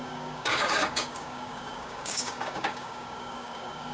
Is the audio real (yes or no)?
no